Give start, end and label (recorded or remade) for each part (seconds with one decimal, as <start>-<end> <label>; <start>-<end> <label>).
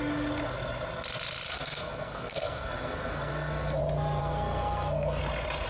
0.0-1.5 recorded; 1.5-3.8 remade; 3.8-4.2 recorded; 4.2-5.2 remade; 5.2-5.7 recorded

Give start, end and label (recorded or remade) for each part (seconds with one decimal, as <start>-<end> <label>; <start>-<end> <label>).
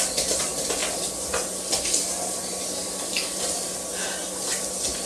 0.0-5.1 recorded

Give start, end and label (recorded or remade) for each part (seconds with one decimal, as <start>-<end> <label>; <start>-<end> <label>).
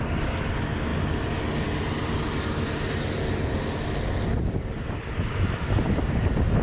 0.0-6.6 recorded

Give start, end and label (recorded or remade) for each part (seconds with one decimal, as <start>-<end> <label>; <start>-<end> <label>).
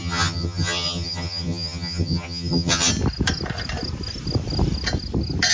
0.0-2.9 remade; 2.9-5.5 recorded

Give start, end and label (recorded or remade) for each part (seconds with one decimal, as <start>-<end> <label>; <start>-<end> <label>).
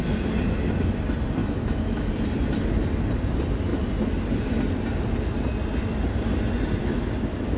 0.0-1.4 recorded; 1.4-2.1 remade; 2.1-6.8 recorded; 6.8-7.6 remade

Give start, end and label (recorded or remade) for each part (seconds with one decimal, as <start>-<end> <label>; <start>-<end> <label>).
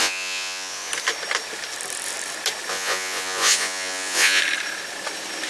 0.0-0.9 remade; 0.9-2.7 recorded; 2.7-4.4 remade; 4.4-5.5 recorded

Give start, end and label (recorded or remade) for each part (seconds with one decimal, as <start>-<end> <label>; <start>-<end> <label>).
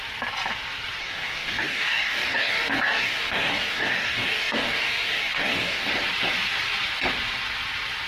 0.0-1.0 recorded; 1.0-5.9 remade; 5.9-8.1 recorded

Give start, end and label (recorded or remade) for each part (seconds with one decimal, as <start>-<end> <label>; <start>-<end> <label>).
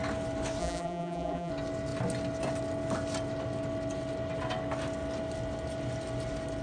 0.0-0.6 recorded; 0.6-1.5 remade; 1.5-6.6 recorded